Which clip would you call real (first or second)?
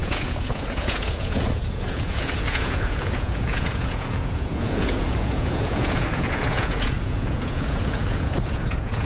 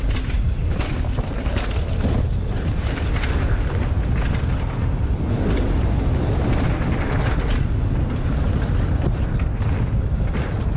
second